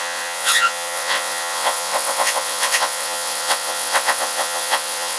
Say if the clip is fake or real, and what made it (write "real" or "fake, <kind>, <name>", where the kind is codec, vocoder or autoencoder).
fake, vocoder, WaveNeXt